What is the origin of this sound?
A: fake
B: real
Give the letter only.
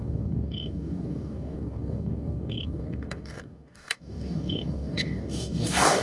A